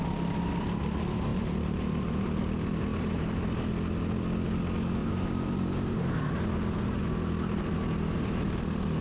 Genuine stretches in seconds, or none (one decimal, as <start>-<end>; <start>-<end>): 0.0-1.3; 2.4-2.9; 3.5-5.0; 6.4-9.0